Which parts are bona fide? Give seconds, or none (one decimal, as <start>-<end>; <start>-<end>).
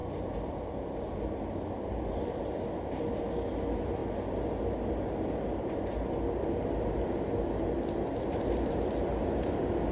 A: 0.0-9.9